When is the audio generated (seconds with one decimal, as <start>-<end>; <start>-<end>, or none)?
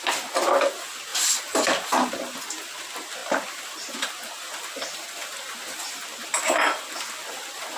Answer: 1.1-2.1